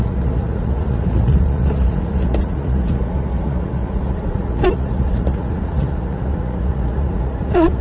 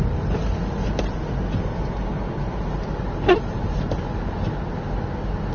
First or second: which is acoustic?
second